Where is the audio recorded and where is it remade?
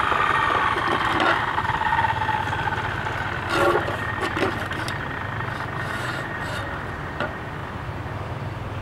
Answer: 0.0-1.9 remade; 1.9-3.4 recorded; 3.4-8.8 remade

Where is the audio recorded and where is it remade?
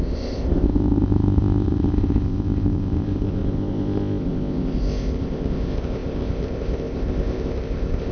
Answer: 0.0-8.1 remade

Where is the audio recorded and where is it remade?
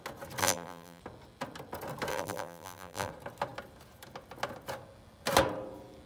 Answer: 0.0-0.4 recorded; 0.4-1.0 remade; 1.0-2.1 recorded; 2.1-3.1 remade; 3.1-6.1 recorded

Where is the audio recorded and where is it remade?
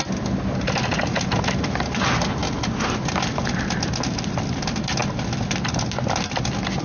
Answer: 0.0-6.8 recorded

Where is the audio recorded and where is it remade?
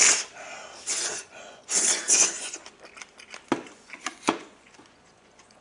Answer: 0.0-0.9 recorded; 0.9-2.6 remade; 2.6-3.6 recorded; 3.6-5.6 remade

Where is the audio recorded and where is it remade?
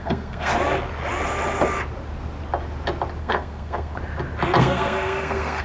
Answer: 0.0-0.5 remade; 0.5-3.2 recorded; 3.2-3.9 remade; 3.9-4.6 recorded; 4.6-5.6 remade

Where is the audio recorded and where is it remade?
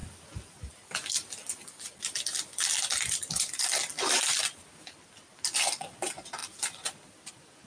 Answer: 0.0-0.7 remade; 0.7-1.4 recorded; 1.4-4.7 remade; 4.7-6.4 recorded; 6.4-7.3 remade; 7.3-7.7 recorded